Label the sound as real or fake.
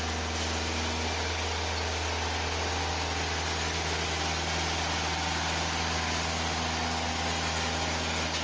real